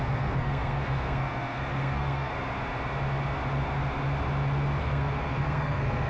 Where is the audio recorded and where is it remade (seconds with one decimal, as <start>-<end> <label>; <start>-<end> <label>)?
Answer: 0.0-2.3 remade; 2.3-4.8 recorded; 4.8-6.1 remade